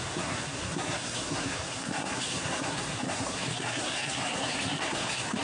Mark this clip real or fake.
fake